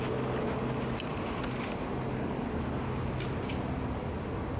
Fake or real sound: real